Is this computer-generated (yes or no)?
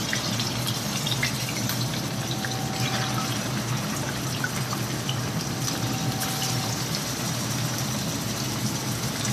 no